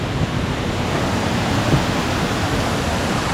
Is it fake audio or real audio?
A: real